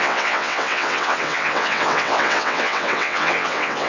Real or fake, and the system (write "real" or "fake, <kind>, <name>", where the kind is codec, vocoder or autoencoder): fake, vocoder, WaveNeXt